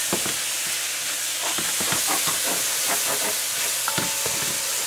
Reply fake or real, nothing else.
real